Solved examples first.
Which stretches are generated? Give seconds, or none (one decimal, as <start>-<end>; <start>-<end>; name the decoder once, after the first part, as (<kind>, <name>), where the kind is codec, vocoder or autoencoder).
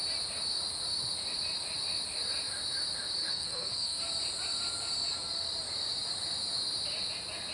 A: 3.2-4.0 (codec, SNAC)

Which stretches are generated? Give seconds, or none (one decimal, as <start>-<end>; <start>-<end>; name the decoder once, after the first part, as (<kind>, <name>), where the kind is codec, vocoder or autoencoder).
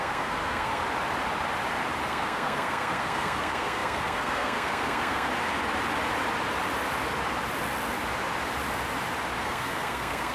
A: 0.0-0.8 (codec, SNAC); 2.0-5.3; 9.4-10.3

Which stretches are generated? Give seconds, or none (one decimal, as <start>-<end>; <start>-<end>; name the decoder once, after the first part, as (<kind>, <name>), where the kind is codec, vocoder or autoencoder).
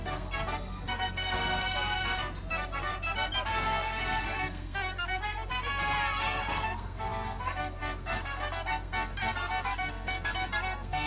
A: 0.0-1.4 (codec, SNAC); 2.5-2.9; 3.5-5.5; 6.5-11.1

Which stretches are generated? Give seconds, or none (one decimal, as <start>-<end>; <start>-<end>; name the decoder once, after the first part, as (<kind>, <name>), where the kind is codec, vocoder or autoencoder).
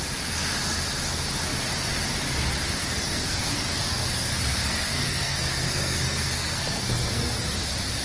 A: 2.8-7.6 (codec, SNAC)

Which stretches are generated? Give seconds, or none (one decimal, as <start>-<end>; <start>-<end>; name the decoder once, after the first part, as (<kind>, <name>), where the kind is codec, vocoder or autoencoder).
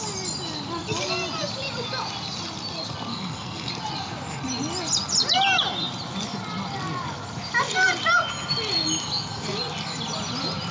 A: 3.1-3.7 (codec, SNAC)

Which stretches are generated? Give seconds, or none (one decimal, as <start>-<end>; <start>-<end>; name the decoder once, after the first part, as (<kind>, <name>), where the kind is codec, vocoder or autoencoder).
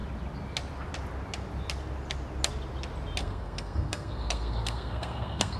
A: 3.2-5.6 (codec, SNAC)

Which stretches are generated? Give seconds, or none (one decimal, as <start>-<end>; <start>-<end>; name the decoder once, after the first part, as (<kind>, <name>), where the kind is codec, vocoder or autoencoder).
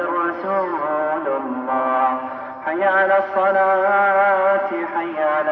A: none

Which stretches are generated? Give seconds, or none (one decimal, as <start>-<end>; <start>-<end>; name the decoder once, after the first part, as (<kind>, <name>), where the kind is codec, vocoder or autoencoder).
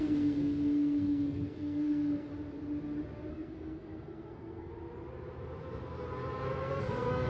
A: 0.0-2.3 (codec, SNAC); 3.3-4.7; 6.6-7.3